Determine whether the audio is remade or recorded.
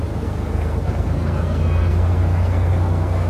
remade